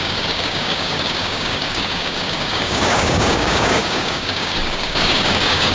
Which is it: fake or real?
fake